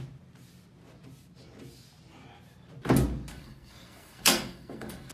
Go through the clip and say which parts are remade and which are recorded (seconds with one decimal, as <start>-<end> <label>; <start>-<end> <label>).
0.0-3.3 recorded; 3.3-5.1 remade